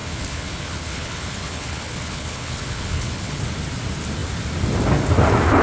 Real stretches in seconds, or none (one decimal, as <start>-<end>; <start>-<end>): 3.4-5.6